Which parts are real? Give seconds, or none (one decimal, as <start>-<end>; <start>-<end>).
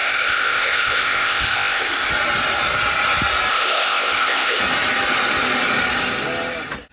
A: 2.1-3.5; 4.6-6.9